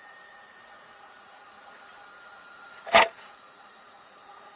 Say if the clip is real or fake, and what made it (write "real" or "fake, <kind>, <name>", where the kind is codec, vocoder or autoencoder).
fake, vocoder, Vocos